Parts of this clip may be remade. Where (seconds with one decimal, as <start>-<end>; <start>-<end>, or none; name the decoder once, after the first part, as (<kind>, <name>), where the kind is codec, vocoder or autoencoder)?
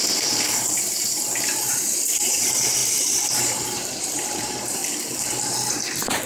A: 0.0-4.8 (vocoder, BigVGAN v2); 5.4-6.3